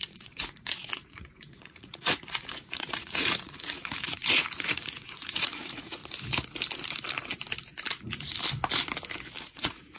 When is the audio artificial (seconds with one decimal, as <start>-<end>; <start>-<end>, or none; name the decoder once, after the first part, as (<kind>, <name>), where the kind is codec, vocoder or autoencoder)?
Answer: 0.0-6.0 (vocoder, Vocos); 9.4-10.0